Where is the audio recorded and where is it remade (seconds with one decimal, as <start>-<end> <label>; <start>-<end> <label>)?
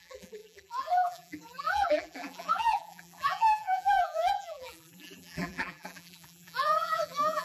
0.0-7.4 remade